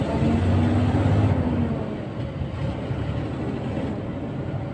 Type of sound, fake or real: real